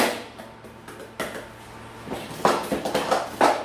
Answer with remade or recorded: recorded